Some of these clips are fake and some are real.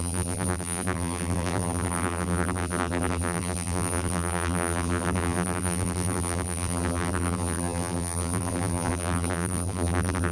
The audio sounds fake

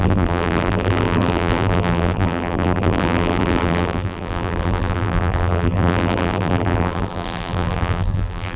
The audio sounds fake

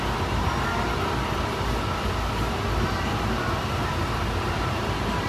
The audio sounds real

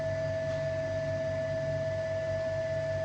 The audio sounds real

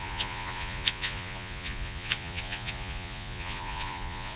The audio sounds fake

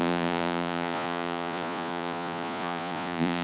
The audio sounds fake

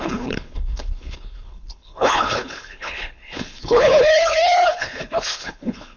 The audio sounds fake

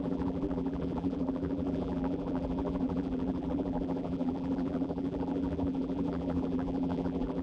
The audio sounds fake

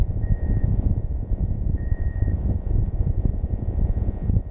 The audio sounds fake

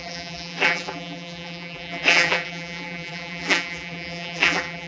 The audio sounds fake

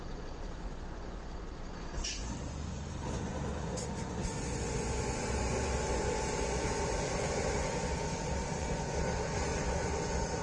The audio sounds fake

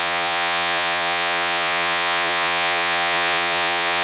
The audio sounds fake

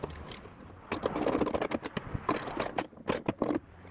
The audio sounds real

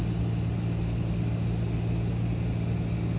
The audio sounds real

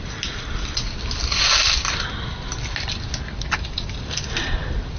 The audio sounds real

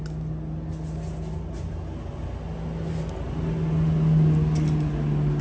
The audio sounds real